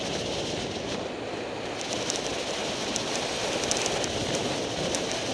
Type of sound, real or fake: real